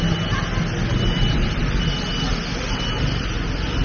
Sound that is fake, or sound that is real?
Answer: real